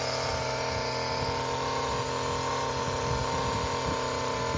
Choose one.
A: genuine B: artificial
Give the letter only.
A